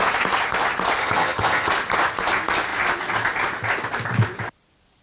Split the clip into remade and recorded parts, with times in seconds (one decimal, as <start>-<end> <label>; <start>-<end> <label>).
0.0-1.0 recorded; 1.0-1.7 remade; 1.7-5.0 recorded